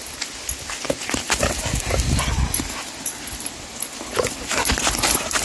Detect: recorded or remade recorded